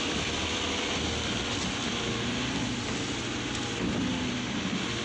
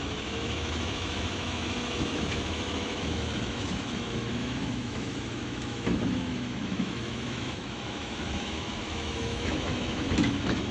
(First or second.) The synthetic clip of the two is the second